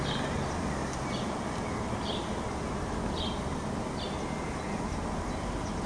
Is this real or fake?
real